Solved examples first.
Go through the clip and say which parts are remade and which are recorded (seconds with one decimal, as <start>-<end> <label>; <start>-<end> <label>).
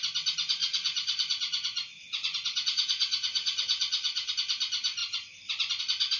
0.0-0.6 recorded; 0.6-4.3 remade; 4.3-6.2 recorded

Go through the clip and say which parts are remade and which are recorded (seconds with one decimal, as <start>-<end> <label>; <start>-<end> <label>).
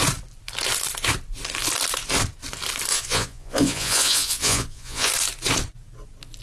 0.0-2.9 recorded; 2.9-5.1 remade; 5.1-6.4 recorded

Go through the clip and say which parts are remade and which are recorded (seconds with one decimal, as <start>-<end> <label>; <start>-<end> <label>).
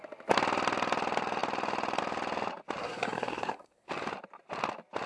0.0-2.8 recorded; 2.8-3.9 remade; 3.9-5.1 recorded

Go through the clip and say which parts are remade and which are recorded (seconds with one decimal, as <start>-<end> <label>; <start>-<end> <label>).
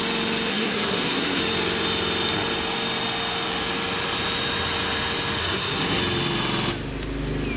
0.0-0.5 recorded; 0.5-1.4 remade; 1.4-5.4 recorded; 5.4-6.0 remade; 6.0-7.6 recorded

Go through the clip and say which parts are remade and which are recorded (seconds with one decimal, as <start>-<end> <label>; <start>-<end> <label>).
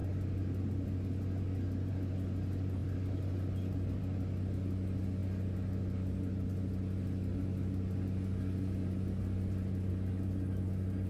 0.0-11.1 recorded